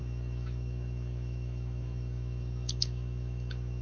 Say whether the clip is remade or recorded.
remade